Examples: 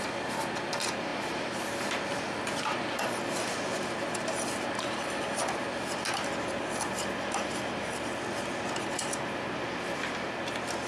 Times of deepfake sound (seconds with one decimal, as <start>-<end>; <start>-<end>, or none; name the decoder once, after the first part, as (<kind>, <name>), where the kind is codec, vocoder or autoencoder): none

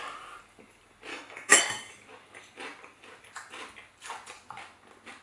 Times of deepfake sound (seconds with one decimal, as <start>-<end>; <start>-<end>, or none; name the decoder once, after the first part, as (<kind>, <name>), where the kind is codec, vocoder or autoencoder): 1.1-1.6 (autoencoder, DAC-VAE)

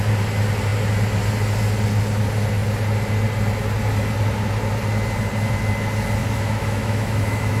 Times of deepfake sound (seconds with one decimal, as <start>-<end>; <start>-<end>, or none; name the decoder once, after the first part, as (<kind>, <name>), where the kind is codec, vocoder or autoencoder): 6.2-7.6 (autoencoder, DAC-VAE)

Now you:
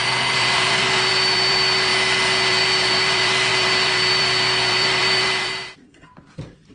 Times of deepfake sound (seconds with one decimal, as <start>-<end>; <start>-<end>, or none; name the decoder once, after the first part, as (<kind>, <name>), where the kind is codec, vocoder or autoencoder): 0.0-1.9 (vocoder, BigVGAN v2); 2.5-6.7

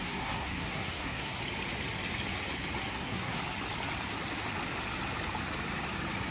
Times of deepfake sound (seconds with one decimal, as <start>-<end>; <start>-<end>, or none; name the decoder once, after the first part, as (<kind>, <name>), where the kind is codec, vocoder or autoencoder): 0.0-1.4 (codec, SNAC); 2.9-3.4

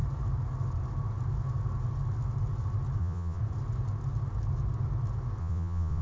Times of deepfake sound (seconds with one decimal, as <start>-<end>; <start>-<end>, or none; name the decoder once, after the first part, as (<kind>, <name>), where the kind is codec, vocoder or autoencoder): 3.0-3.4 (vocoder, Vocos); 5.4-6.0

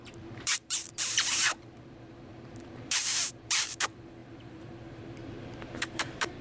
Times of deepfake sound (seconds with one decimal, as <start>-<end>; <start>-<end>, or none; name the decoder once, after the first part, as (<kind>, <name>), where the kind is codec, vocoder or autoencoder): 0.0-6.4 (vocoder, BigVGAN v2)

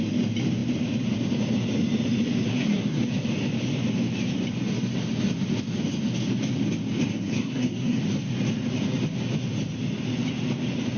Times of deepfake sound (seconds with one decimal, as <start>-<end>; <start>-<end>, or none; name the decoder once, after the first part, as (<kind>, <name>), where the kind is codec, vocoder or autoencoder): 2.5-3.1 (codec, SNAC); 7.1-8.0